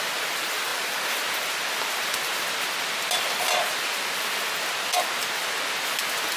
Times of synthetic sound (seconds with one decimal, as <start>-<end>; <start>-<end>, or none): none

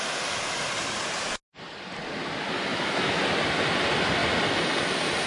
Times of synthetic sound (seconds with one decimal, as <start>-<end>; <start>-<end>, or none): 2.7-3.2

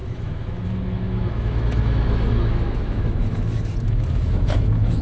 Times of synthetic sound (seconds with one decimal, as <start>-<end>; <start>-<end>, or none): 0.0-5.0

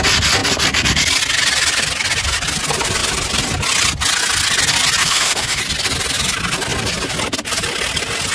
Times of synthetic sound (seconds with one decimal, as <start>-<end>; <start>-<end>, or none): 5.0-5.6

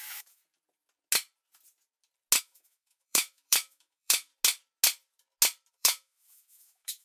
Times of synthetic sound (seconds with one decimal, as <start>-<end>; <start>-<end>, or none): 0.0-0.4; 2.4-4.3; 5.7-7.0